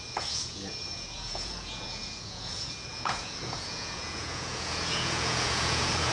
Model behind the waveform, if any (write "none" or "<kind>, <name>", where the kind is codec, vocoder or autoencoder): vocoder, Vocos